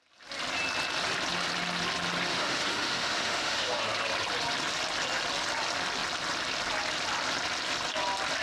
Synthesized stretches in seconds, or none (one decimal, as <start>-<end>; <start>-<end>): 2.3-3.8